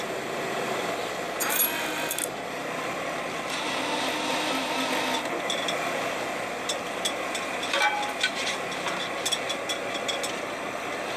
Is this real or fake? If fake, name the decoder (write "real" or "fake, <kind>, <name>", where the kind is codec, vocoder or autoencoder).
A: real